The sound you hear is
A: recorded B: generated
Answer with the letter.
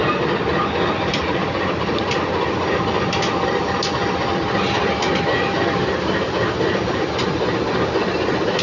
B